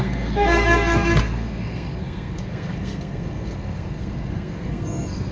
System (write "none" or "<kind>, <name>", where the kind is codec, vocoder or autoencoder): codec, SNAC